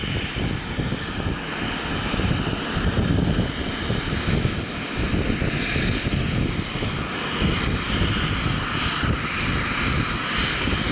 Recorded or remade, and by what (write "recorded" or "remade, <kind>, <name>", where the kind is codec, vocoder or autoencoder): recorded